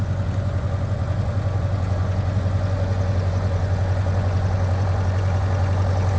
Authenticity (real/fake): fake